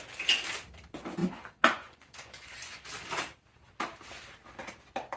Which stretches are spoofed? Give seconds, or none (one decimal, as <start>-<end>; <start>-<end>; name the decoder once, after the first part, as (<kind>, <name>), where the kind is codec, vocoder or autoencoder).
1.2-2.8 (vocoder, Vocos)